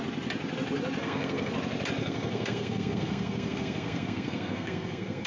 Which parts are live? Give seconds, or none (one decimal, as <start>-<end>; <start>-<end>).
0.0-1.0; 1.5-2.0